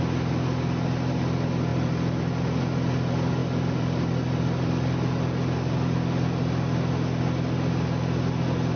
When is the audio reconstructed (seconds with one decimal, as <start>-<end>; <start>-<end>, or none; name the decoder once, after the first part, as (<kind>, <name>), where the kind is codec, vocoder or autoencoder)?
none